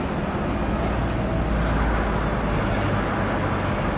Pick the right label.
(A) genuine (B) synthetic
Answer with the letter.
A